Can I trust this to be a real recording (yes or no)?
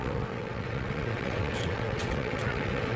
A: no